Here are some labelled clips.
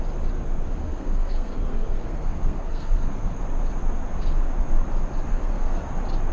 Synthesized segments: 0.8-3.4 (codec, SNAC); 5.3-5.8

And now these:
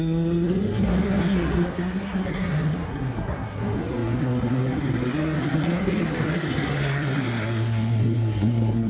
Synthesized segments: 0.0-8.9 (codec, SNAC)

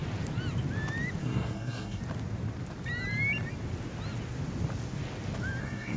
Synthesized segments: 1.2-2.0 (codec, SNAC); 5.6-6.0